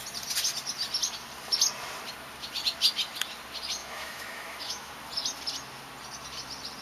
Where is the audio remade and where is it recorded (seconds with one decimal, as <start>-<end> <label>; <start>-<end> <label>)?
0.0-3.8 recorded; 3.8-4.9 remade; 4.9-6.8 recorded